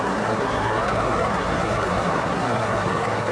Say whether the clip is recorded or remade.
remade